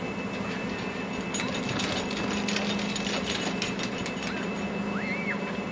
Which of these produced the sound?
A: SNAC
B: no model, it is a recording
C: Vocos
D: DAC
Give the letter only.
B